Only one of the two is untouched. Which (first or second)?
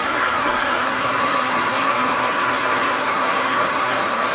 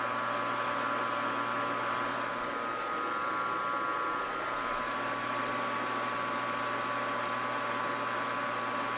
second